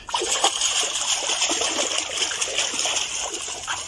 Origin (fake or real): real